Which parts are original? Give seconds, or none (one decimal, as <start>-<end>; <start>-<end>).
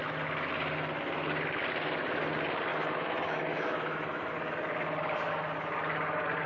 0.0-2.7; 4.3-6.5